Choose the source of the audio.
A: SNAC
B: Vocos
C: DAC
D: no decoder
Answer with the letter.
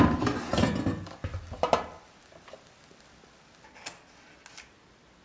D